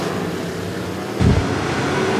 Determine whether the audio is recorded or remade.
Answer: recorded